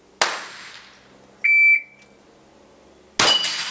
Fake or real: real